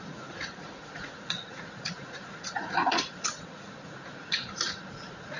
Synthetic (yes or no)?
yes